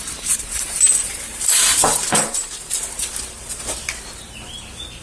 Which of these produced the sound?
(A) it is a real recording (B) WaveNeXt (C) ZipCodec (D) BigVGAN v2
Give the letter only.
D